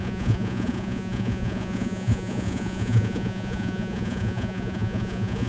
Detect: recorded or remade remade